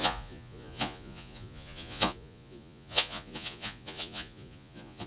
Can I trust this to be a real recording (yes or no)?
no